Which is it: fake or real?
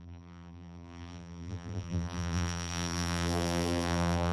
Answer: fake